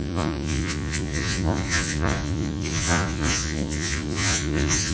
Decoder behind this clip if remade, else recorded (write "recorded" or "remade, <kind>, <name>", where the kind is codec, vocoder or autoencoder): remade, vocoder, Vocos